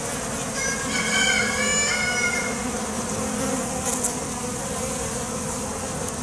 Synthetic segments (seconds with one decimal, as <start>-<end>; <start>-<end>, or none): none